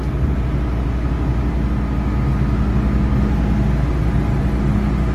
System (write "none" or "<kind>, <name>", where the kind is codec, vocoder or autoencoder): none